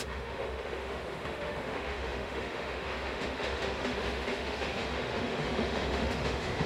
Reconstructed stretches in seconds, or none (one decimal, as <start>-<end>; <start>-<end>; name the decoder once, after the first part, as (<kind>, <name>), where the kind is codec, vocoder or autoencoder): 0.0-6.7 (autoencoder, DAC-VAE)